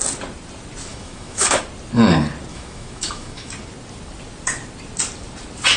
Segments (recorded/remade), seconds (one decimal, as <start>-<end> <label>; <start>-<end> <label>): 0.0-0.9 recorded; 0.9-1.6 remade; 1.6-2.5 recorded; 2.5-3.5 remade; 3.5-5.8 recorded